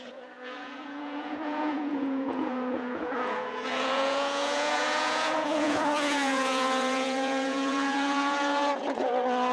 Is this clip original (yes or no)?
no